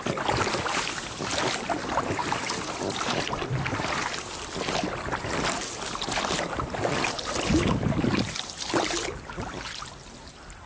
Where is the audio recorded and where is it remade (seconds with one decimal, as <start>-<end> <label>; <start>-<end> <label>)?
0.0-10.7 recorded